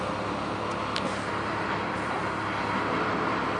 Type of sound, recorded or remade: recorded